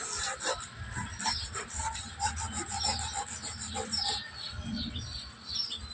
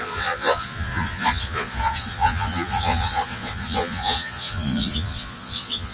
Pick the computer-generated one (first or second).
second